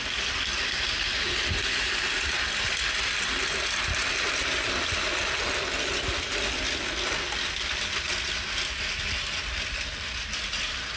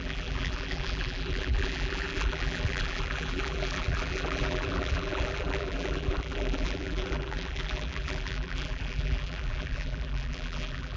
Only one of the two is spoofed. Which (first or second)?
second